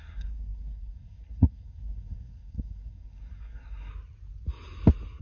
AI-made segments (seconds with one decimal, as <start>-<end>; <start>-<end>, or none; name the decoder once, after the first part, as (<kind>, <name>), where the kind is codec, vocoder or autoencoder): 0.0-3.9 (codec, SNAC)